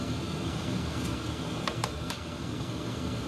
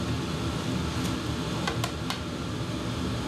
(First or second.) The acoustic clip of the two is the second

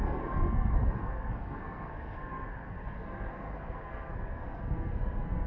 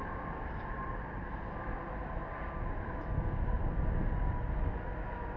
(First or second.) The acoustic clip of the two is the second